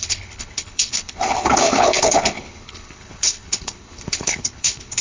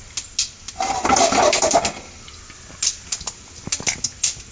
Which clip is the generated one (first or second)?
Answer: first